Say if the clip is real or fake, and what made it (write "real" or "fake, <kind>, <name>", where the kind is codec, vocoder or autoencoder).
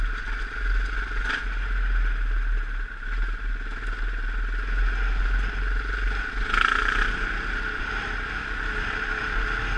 real